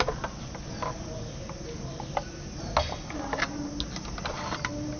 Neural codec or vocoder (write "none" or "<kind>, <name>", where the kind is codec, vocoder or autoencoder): none